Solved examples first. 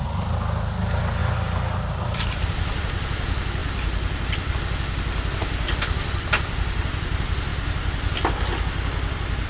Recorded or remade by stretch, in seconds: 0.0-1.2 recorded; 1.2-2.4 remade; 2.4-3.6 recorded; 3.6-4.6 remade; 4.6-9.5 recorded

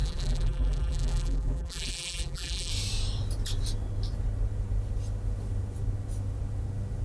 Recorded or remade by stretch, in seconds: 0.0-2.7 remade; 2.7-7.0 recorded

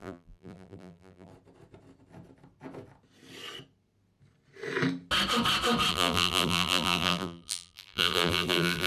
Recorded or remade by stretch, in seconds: 0.0-1.3 remade; 1.3-5.9 recorded; 5.9-8.9 remade